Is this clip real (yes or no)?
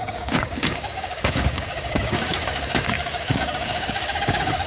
no